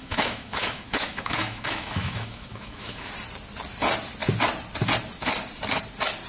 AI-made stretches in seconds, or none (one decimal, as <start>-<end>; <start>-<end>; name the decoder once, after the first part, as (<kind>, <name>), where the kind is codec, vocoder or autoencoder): 0.0-3.1 (autoencoder, DAC-VAE)